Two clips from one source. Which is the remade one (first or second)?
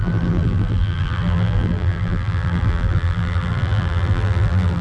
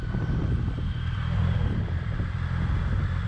first